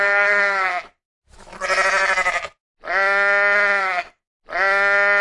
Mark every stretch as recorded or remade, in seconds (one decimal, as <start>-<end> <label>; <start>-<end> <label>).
0.0-0.7 remade; 0.7-3.8 recorded; 3.8-4.2 remade; 4.2-5.2 recorded

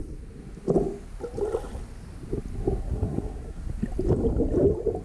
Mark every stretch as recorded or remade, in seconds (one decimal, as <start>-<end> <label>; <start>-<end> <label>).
0.0-2.8 recorded; 2.8-3.7 remade; 3.7-5.0 recorded

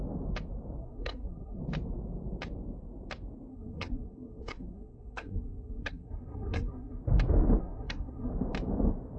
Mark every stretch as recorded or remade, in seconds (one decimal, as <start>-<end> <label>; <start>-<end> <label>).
0.0-0.8 recorded; 0.8-1.6 remade; 1.6-3.5 recorded; 3.5-7.0 remade; 7.0-7.6 recorded; 7.6-8.3 remade; 8.3-9.2 recorded

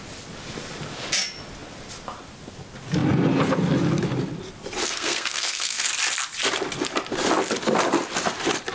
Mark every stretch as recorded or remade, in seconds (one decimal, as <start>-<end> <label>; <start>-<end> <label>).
0.0-4.8 recorded; 4.8-5.9 remade; 5.9-8.7 recorded